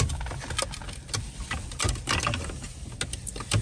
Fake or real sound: real